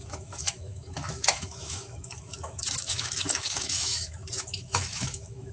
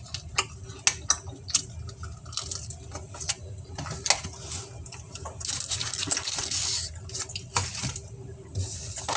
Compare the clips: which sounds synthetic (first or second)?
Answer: first